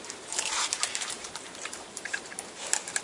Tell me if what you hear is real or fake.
fake